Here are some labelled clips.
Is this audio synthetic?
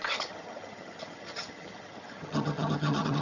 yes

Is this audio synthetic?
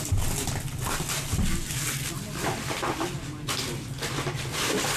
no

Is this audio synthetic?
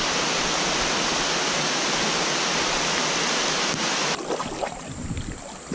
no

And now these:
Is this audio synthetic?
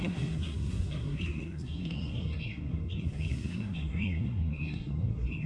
yes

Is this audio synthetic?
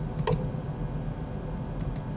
no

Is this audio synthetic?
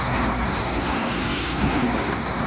yes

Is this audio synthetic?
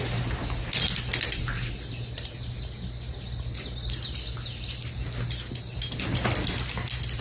no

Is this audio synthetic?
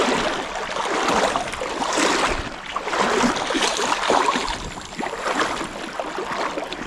no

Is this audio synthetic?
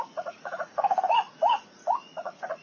yes